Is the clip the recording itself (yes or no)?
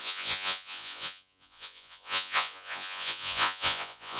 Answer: no